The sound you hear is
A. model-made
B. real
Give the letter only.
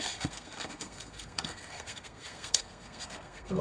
A